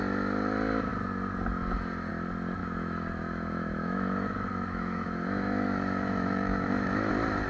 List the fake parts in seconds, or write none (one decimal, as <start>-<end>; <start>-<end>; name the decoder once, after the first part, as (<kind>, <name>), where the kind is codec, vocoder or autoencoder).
2.6-7.1 (autoencoder, DAC-VAE)